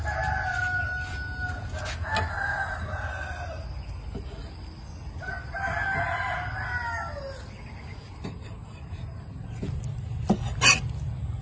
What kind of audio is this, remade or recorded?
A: recorded